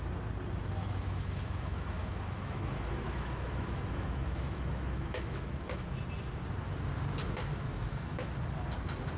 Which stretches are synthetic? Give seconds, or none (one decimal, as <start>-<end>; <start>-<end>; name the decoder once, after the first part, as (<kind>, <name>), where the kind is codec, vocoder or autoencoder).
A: 0.8-5.9 (autoencoder, DAC-VAE); 7.5-8.4